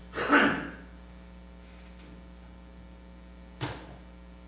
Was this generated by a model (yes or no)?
no